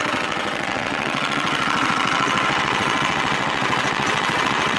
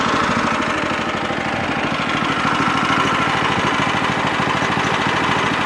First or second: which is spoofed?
first